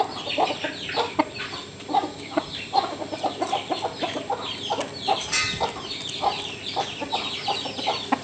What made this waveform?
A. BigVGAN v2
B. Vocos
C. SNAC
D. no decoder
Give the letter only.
A